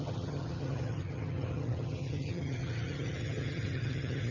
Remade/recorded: remade